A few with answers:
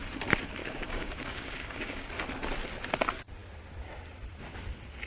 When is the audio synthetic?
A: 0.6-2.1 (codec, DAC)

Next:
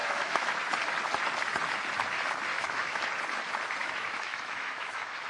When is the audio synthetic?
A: 0.0-0.6 (autoencoder, DAC-VAE); 2.5-3.0; 3.8-5.3

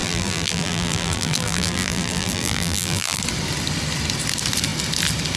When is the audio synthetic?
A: 0.0-3.2 (vocoder, BigVGAN v2)

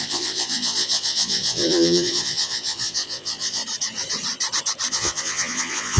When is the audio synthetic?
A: 0.0-3.6 (vocoder, Vocos); 4.9-6.0